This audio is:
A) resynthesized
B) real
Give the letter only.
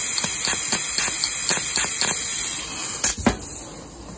B